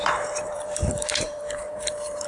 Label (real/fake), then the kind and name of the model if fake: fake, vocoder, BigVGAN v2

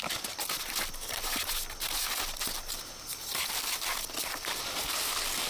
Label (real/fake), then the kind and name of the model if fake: real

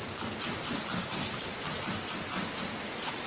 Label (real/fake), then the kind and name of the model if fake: fake, vocoder, BigVGAN v2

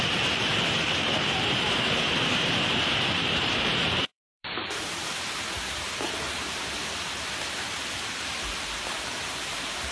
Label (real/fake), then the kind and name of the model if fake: fake, vocoder, BigVGAN v2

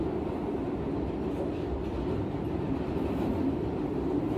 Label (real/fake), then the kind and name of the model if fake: real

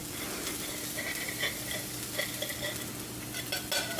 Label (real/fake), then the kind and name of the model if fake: real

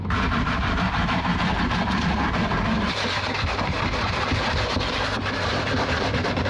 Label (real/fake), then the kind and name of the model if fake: fake, vocoder, BigVGAN v2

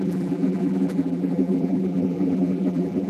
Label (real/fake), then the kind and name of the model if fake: fake, vocoder, BigVGAN v2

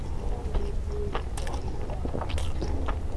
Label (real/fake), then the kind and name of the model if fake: real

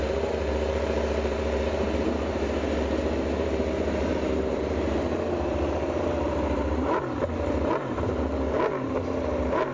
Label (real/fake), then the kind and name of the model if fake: fake, vocoder, BigVGAN v2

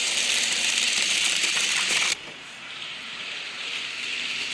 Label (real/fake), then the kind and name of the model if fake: fake, vocoder, BigVGAN v2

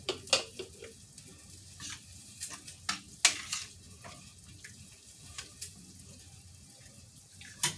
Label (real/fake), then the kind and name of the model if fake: real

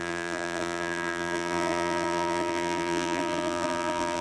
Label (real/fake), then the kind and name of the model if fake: fake, vocoder, BigVGAN v2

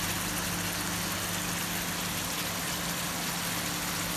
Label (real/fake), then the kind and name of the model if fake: real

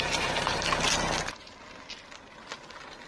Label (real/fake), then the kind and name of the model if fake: real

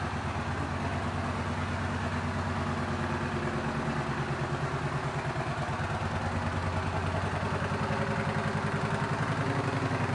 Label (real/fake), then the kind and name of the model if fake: real